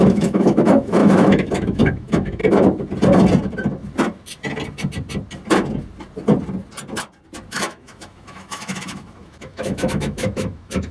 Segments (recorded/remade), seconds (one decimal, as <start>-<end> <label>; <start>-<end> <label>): 0.0-2.4 remade; 2.4-7.5 recorded; 7.5-10.9 remade